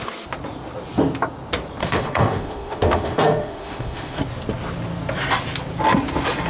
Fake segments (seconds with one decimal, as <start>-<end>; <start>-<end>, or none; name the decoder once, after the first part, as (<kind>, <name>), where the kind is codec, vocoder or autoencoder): 1.8-4.2 (autoencoder, DAC-VAE)